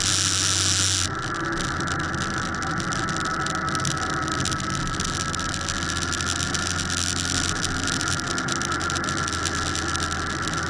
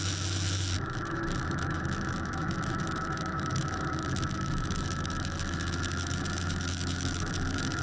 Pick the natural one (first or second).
first